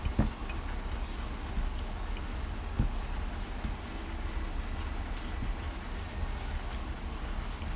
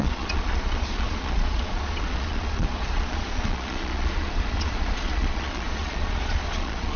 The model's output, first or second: second